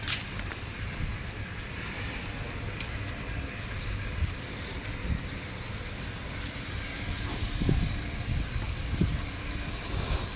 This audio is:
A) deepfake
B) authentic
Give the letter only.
A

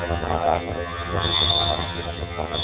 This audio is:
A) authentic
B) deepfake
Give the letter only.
B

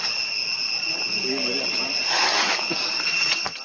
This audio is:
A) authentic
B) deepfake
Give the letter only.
A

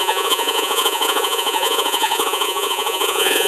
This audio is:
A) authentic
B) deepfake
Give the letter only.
B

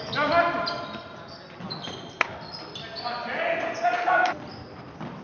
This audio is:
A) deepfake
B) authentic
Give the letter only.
B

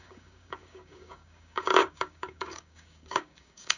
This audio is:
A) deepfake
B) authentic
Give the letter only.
A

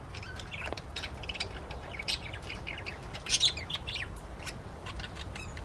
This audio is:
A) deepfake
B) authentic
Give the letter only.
A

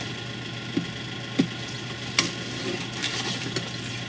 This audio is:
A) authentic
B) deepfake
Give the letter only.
A